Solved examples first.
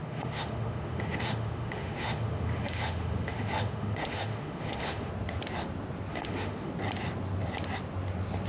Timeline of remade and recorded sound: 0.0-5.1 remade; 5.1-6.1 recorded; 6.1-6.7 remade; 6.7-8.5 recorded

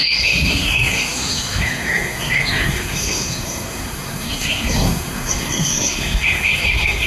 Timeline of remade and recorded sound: 0.0-7.1 remade

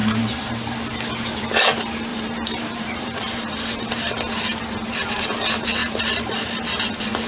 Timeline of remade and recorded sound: 0.0-0.8 remade; 0.8-2.1 recorded; 2.1-4.1 remade; 4.1-5.8 recorded; 5.8-6.6 remade; 6.6-7.3 recorded

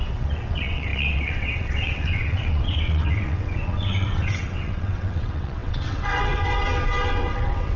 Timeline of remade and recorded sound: 0.0-7.8 remade

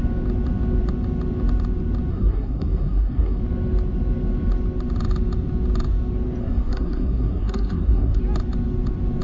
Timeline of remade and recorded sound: 0.0-2.1 recorded; 2.1-3.4 remade; 3.4-6.4 recorded; 6.4-8.2 remade; 8.2-9.2 recorded

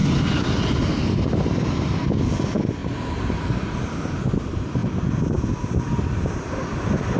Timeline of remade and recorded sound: 0.0-2.8 recorded; 2.8-4.2 remade; 4.2-7.2 recorded